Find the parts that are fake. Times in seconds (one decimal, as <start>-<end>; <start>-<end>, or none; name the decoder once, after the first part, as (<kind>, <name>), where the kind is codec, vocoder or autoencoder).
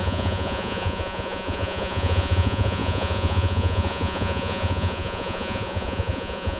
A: 0.0-6.6 (vocoder, Vocos)